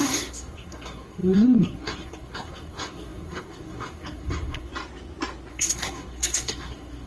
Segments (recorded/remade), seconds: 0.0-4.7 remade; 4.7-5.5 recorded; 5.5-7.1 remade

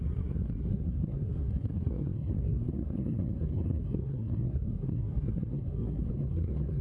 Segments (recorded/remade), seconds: 0.0-6.8 remade

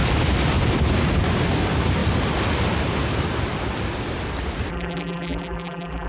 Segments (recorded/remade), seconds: 0.0-4.7 recorded; 4.7-6.1 remade

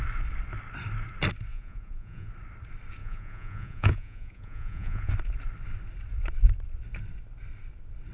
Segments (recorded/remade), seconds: 0.0-1.5 recorded; 1.5-2.3 remade; 2.3-3.0 recorded; 3.0-5.1 remade; 5.1-8.1 recorded

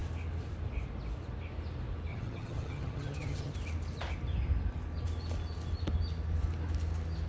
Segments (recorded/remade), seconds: 0.0-2.1 recorded; 2.1-3.5 remade; 3.5-7.3 recorded

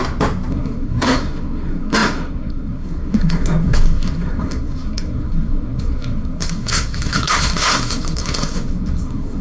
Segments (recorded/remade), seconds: 0.0-0.5 recorded; 0.5-9.4 remade

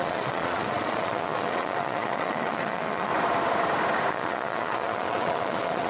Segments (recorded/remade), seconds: 0.0-3.1 remade; 3.1-4.1 recorded; 4.1-5.9 remade

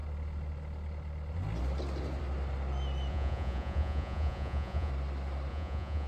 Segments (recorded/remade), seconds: 0.0-3.1 recorded; 3.1-4.9 remade; 4.9-5.5 recorded; 5.5-6.1 remade